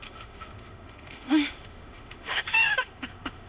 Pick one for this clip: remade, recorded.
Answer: remade